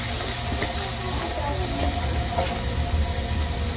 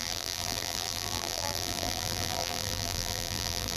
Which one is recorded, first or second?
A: first